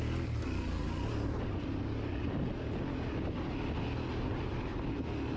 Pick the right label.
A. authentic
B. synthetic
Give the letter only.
A